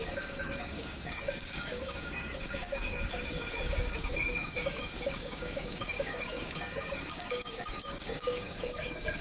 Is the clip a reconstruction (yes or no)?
yes